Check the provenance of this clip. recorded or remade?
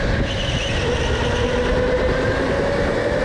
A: recorded